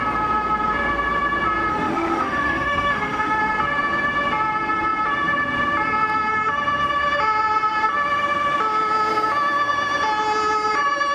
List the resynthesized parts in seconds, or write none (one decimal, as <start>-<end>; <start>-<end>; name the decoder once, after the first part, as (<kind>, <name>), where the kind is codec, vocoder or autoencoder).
1.7-3.4 (autoencoder, DAC-VAE)